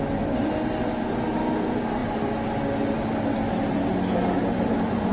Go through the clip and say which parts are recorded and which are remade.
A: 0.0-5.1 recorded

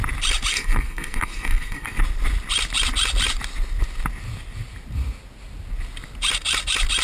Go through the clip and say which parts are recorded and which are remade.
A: 0.0-0.5 recorded; 0.5-2.0 remade; 2.0-7.0 recorded

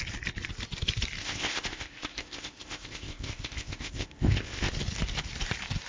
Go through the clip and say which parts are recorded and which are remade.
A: 0.0-1.2 recorded; 1.2-4.7 remade; 4.7-5.9 recorded

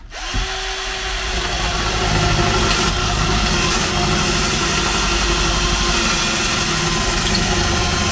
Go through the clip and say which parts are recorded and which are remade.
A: 0.0-3.0 recorded; 3.0-3.9 remade; 3.9-8.1 recorded

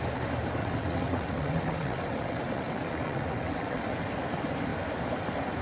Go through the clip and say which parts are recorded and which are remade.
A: 0.0-0.6 recorded; 0.6-4.0 remade; 4.0-5.6 recorded

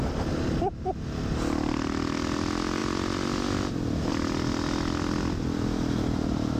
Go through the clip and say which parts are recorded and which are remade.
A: 0.0-6.6 recorded

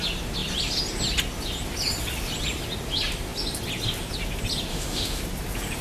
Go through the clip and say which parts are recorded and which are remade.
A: 0.0-4.7 recorded; 4.7-5.2 remade; 5.2-5.8 recorded